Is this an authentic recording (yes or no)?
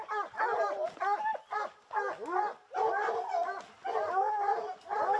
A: yes